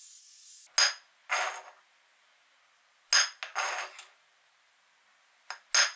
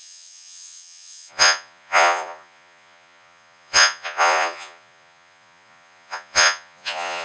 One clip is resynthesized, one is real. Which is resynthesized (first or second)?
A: second